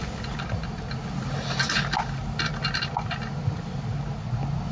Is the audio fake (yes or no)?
no